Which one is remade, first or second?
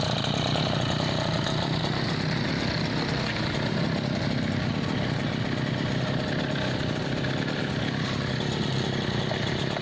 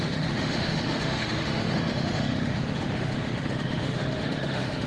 second